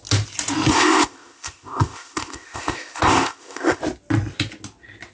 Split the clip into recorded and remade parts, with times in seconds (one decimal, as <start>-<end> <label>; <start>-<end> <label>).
0.0-0.7 recorded; 0.7-3.8 remade; 3.8-5.1 recorded